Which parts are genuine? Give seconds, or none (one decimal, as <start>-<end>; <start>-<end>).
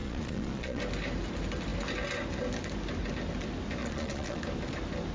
0.8-3.8; 4.4-5.1